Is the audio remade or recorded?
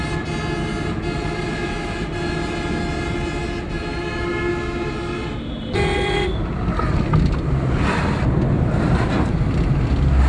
recorded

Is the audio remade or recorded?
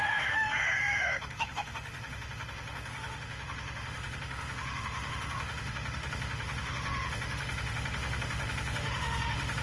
remade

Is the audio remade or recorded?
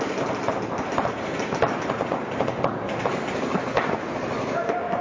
recorded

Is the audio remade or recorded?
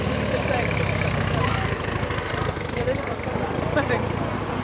recorded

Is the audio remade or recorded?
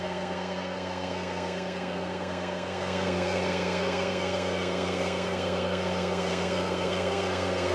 remade